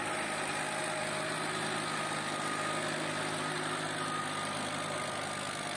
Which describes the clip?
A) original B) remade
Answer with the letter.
A